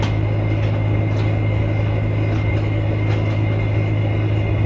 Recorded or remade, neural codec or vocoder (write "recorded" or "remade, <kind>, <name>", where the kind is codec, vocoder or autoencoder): recorded